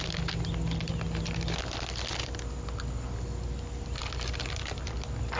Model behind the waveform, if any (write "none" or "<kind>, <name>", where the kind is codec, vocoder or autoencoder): none